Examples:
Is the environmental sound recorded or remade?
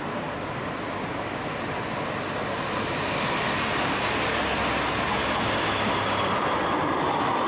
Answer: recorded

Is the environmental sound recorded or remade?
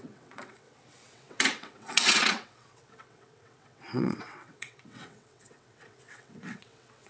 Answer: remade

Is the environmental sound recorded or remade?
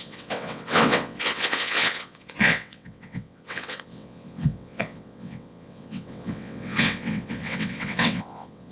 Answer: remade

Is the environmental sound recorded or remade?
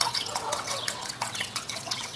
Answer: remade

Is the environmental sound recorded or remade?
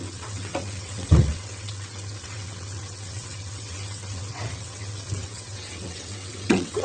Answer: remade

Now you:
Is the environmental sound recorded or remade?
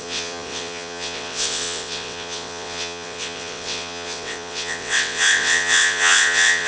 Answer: remade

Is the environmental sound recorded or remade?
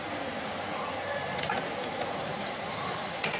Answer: recorded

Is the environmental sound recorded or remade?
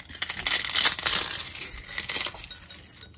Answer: recorded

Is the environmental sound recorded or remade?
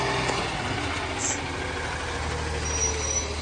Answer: recorded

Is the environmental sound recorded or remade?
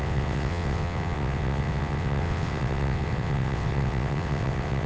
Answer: remade